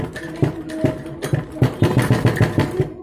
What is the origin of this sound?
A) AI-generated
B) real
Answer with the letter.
B